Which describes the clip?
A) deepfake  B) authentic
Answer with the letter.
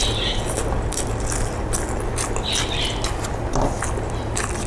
B